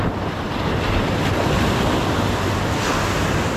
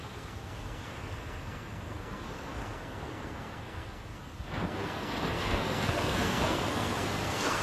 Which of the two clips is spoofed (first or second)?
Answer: second